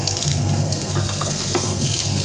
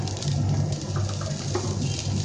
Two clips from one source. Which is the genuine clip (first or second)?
second